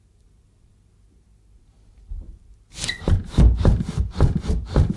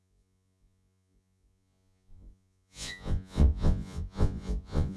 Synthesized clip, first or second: second